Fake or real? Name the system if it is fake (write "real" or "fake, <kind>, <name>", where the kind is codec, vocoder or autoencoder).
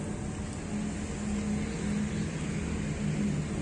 real